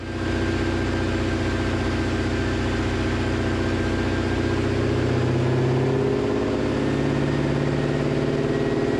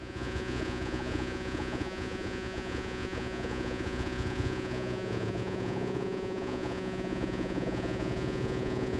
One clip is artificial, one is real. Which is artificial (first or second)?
second